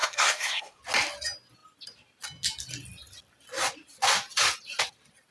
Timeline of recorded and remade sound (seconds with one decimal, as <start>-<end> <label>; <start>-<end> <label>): 0.0-0.8 remade; 0.8-5.3 recorded

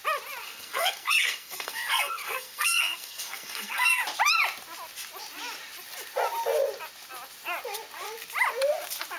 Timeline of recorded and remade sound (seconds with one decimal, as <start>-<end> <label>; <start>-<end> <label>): 0.0-0.4 recorded; 0.4-4.0 remade; 4.0-9.2 recorded

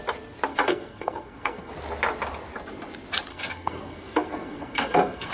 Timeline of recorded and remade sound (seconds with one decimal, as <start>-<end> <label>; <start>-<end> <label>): 0.0-0.5 recorded; 0.5-1.7 remade; 1.7-3.3 recorded; 3.3-5.3 remade

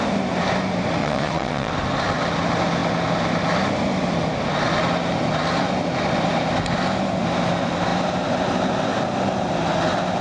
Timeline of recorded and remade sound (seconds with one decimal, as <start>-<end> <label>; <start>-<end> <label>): 0.0-1.0 recorded; 1.0-1.7 remade; 1.7-10.2 recorded

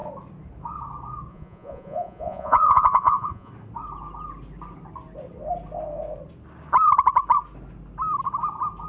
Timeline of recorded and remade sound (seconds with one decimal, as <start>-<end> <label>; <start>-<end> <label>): 0.0-1.3 recorded; 1.3-3.5 remade; 3.5-8.9 recorded

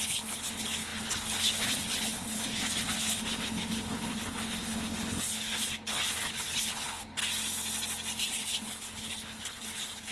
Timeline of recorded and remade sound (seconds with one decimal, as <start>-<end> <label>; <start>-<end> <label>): 0.0-7.2 remade; 7.2-8.2 recorded; 8.2-10.1 remade

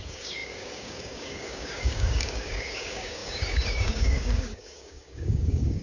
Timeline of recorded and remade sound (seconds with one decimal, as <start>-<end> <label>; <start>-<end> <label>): 0.0-5.8 remade

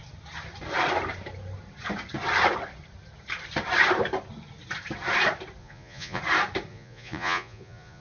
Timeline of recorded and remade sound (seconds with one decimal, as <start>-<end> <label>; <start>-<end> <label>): 0.0-5.6 recorded; 5.6-6.2 remade; 6.2-6.7 recorded; 6.7-8.0 remade